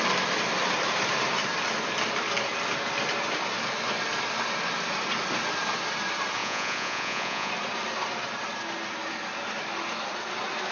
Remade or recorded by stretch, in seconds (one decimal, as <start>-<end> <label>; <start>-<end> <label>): 0.0-6.4 recorded; 6.4-7.5 remade; 7.5-10.7 recorded